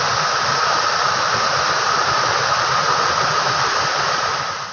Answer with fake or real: real